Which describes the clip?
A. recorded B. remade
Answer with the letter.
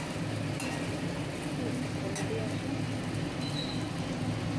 A